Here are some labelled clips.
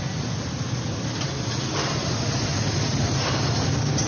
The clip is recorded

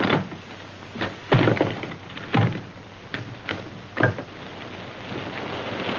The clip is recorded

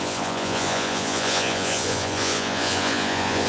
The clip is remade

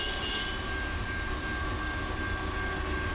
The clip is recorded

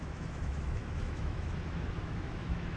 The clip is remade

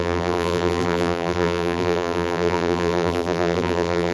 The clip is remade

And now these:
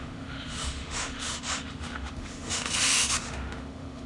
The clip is remade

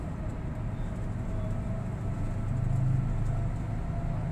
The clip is recorded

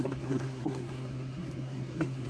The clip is remade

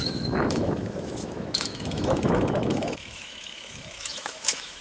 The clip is remade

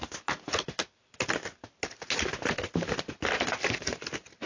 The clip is recorded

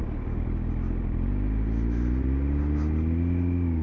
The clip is recorded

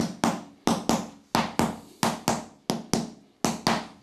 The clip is recorded